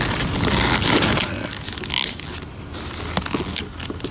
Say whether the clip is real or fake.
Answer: real